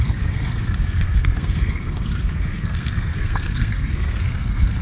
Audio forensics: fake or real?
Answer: fake